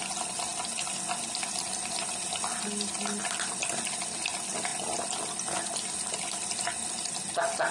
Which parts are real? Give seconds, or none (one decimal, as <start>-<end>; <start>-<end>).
0.0-7.7